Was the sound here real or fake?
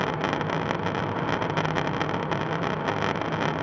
real